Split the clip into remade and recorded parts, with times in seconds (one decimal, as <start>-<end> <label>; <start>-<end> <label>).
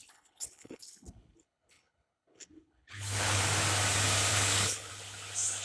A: 0.0-3.4 remade; 3.4-4.3 recorded; 4.3-4.9 remade; 4.9-5.6 recorded